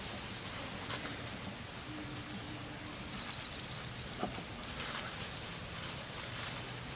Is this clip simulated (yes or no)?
no